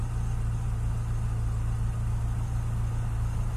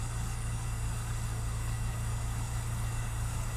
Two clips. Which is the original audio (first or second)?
first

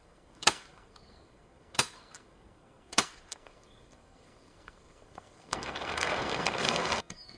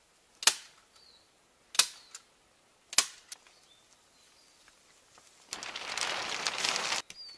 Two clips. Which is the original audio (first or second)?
second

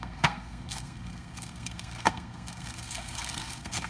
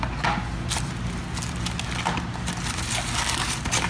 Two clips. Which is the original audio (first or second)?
second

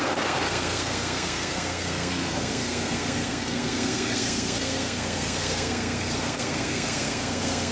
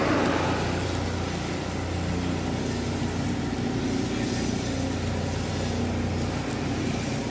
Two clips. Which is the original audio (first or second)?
second